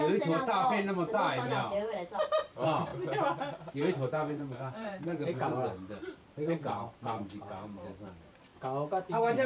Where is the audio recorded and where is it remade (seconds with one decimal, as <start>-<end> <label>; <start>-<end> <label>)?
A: 0.0-2.9 remade; 2.9-3.7 recorded; 3.7-8.5 remade; 8.5-9.1 recorded; 9.1-9.5 remade